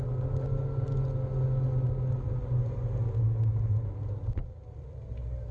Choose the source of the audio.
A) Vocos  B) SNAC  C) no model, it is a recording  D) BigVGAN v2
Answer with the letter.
C